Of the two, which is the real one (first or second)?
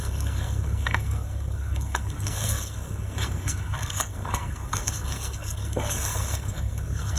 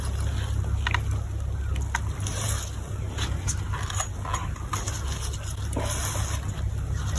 second